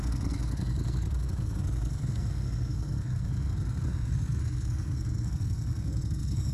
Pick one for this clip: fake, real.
fake